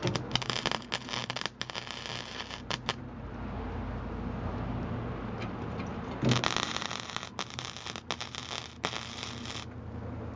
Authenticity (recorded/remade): recorded